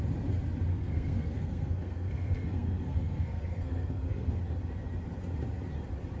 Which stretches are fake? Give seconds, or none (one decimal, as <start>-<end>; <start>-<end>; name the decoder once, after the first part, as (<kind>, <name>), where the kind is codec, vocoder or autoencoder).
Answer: 0.7-4.4 (codec, SNAC)